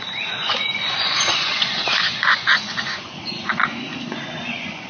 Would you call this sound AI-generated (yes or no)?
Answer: yes